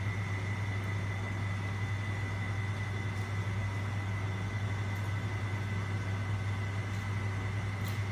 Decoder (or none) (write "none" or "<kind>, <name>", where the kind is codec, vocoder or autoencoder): none